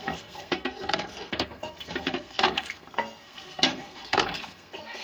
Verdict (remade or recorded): remade